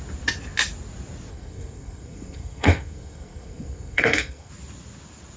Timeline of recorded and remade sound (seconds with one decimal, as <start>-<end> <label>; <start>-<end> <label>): 0.0-1.3 recorded; 1.3-4.5 remade; 4.5-5.4 recorded